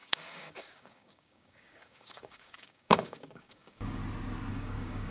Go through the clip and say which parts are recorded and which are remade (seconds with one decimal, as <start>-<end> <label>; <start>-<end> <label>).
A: 0.0-4.0 remade; 4.0-4.5 recorded; 4.5-5.1 remade